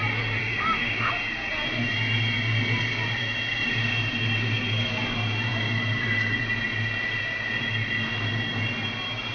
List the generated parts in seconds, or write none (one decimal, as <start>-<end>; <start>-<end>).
0.4-1.1